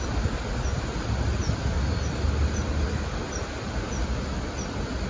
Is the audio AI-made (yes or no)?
no